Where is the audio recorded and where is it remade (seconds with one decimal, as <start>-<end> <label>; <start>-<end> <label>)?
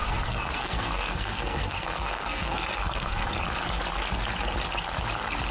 0.0-3.3 remade; 3.3-5.5 recorded